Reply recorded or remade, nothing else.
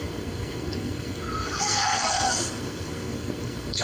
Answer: remade